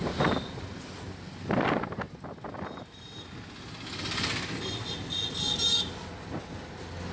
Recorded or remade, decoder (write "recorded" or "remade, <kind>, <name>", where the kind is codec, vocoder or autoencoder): recorded